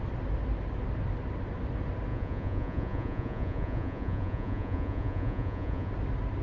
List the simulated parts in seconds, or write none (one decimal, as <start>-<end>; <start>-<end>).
2.1-5.9